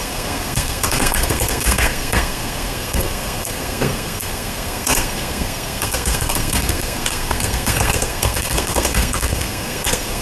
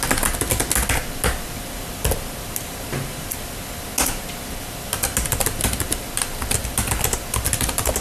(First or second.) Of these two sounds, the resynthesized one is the first